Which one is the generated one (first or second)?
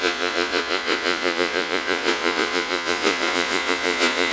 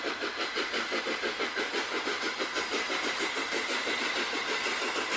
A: first